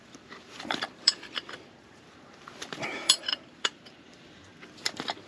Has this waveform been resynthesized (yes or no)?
yes